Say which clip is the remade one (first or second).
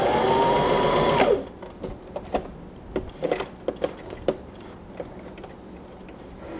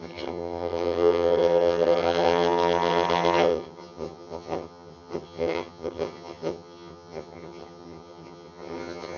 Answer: second